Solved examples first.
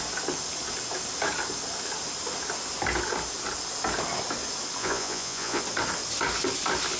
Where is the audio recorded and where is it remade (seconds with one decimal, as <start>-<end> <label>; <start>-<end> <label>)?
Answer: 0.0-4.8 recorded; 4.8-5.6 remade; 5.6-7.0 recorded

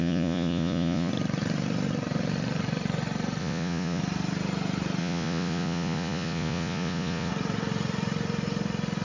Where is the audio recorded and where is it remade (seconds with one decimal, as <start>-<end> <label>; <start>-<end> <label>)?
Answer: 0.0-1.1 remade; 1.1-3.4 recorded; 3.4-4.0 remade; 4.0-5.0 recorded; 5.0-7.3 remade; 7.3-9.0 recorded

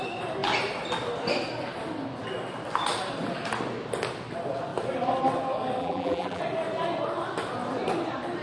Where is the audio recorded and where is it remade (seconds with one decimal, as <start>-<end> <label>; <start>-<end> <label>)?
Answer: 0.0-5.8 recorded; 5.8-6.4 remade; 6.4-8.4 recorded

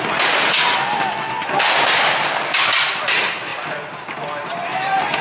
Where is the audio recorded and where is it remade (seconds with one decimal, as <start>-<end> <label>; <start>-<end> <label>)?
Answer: 0.0-5.2 recorded

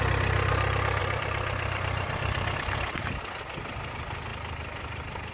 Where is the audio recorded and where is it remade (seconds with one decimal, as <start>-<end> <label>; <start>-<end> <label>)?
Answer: 0.0-1.0 recorded; 1.0-3.2 remade; 3.2-4.3 recorded; 4.3-5.3 remade

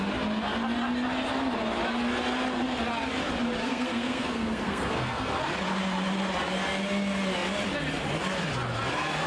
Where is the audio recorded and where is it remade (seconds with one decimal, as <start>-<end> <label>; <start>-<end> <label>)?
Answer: 0.0-3.6 recorded; 3.6-5.4 remade; 5.4-9.3 recorded